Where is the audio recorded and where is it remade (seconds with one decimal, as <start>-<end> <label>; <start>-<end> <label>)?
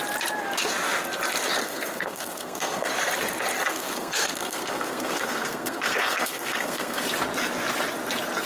0.0-1.6 recorded; 1.6-2.9 remade; 2.9-3.7 recorded; 3.7-7.0 remade; 7.0-8.5 recorded